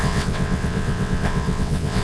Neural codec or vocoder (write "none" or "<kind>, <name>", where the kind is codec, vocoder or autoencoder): vocoder, WaveNeXt